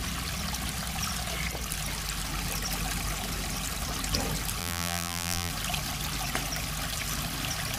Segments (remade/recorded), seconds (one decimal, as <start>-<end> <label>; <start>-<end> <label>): 0.0-4.6 recorded; 4.6-5.5 remade; 5.5-7.8 recorded